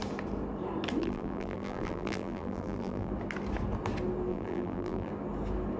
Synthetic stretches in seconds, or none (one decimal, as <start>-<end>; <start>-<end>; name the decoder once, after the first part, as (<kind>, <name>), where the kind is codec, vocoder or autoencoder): 1.0-3.1 (vocoder, BigVGAN v2); 4.3-5.1